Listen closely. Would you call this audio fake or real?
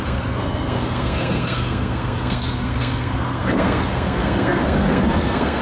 fake